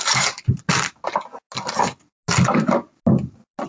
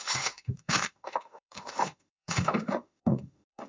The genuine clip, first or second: first